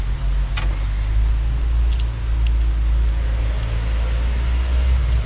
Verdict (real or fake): real